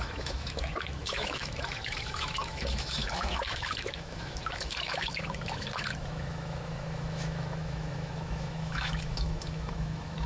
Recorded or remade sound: remade